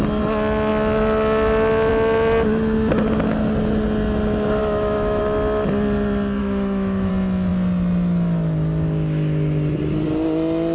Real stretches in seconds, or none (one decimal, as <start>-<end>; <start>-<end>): 0.0-4.6; 5.2-6.4; 7.1-10.7